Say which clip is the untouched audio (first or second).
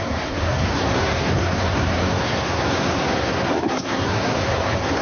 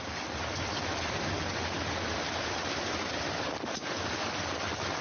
second